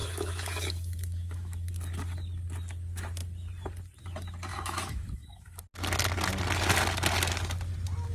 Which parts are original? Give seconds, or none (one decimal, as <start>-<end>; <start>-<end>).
1.7-4.5; 5.6-8.1